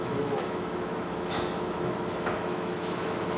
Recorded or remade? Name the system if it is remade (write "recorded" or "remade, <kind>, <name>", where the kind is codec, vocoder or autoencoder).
remade, autoencoder, DAC-VAE